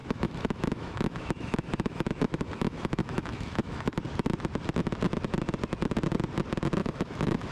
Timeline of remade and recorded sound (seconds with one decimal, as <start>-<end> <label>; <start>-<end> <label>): 0.0-4.0 remade; 4.0-6.8 recorded; 6.8-7.5 remade